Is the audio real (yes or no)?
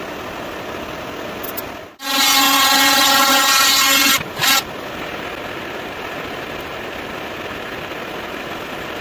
yes